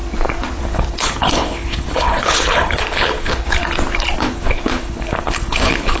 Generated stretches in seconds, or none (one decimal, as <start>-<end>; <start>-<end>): 0.6-3.6; 4.2-6.0